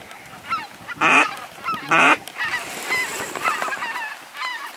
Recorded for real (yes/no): yes